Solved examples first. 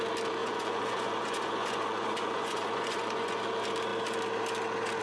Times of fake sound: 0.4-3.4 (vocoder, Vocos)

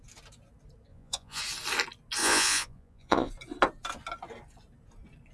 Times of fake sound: 0.9-1.4 (vocoder, Vocos); 2.2-3.3

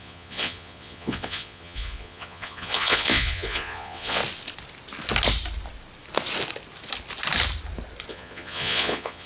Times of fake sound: 0.0-4.2 (vocoder, Vocos); 8.1-9.3

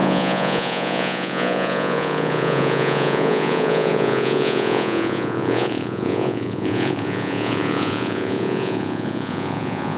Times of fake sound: 0.0-10.0 (vocoder, Vocos)

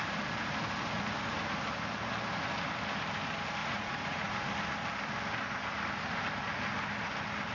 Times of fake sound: 3.6-4.5 (vocoder, Vocos)

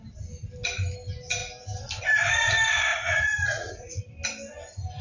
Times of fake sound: 2.9-4.0 (vocoder, Vocos)

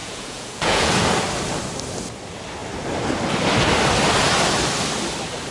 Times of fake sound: 0.0-0.9 (vocoder, Vocos)